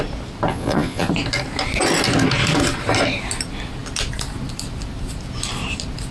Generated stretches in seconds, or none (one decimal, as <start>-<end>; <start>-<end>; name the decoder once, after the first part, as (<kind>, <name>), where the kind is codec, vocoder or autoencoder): 0.5-1.1 (vocoder, Vocos)